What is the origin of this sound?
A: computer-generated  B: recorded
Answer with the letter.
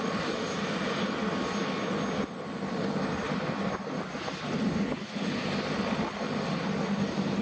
B